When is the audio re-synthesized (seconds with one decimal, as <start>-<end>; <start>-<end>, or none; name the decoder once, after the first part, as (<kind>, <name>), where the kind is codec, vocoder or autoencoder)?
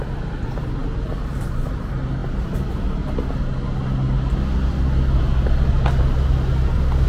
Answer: none